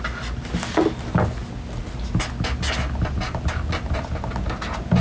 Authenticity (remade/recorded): recorded